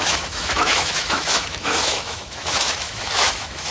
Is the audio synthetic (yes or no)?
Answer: yes